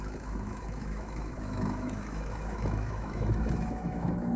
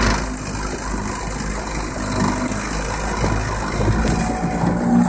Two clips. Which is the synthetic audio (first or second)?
first